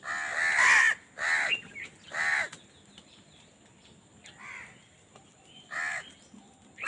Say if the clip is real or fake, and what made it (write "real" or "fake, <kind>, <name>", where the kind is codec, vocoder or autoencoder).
real